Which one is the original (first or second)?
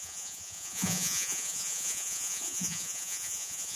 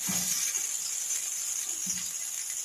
second